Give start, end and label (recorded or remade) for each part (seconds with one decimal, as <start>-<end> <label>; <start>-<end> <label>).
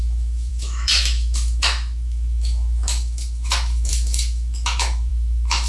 0.0-5.7 remade